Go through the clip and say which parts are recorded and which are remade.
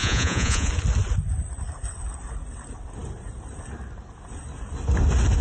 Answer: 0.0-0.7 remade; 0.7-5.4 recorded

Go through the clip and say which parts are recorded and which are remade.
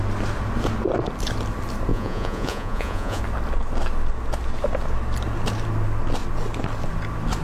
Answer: 0.0-1.9 recorded; 1.9-3.2 remade; 3.2-7.4 recorded